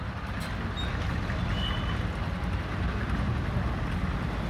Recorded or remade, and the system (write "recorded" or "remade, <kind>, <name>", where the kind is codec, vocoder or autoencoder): recorded